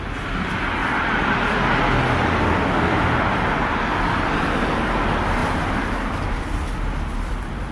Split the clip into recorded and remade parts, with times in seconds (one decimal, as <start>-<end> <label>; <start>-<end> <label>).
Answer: 0.0-0.8 recorded; 0.8-1.8 remade; 1.8-7.7 recorded